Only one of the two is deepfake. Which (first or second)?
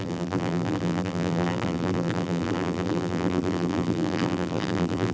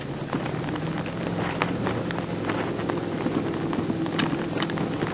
first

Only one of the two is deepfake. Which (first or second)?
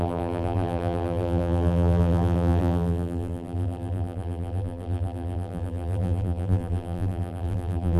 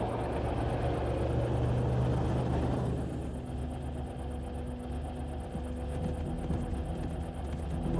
first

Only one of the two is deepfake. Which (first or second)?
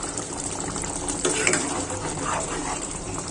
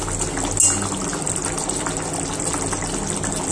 first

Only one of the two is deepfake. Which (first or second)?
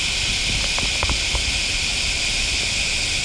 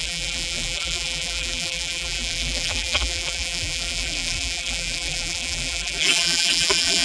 second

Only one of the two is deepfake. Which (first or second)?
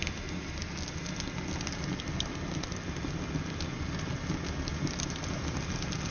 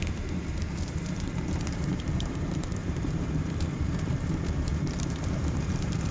second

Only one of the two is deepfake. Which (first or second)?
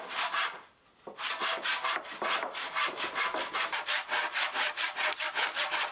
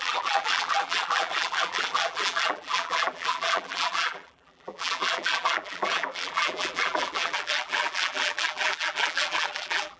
second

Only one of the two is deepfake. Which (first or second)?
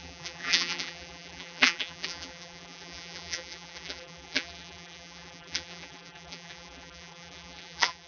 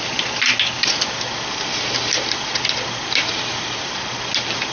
first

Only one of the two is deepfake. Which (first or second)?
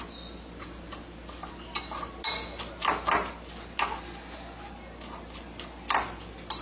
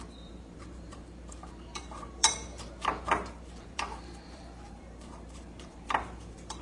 second